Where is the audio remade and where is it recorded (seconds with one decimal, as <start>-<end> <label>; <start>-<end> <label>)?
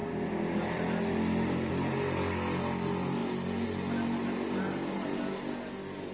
0.0-6.1 recorded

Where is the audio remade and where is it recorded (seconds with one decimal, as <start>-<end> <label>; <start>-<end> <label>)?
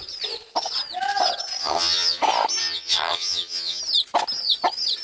0.0-1.6 recorded; 1.6-2.2 remade; 2.2-2.6 recorded; 2.6-3.8 remade; 3.8-5.0 recorded